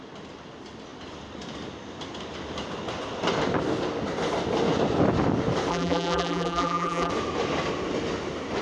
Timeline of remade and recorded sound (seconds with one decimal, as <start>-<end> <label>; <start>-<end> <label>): 0.0-5.7 recorded; 5.7-7.1 remade; 7.1-8.6 recorded